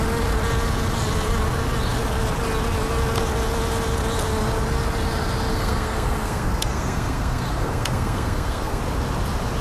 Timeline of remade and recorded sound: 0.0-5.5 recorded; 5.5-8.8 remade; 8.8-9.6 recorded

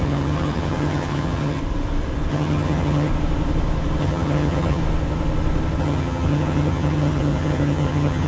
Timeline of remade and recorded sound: 0.0-1.6 remade; 1.6-2.3 recorded; 2.3-3.1 remade; 3.1-4.0 recorded; 4.0-4.8 remade; 4.8-5.8 recorded; 5.8-8.3 remade